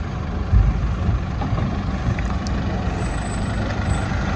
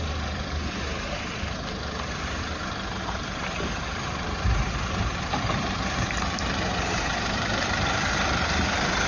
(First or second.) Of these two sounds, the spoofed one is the second